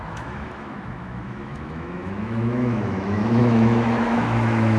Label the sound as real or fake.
fake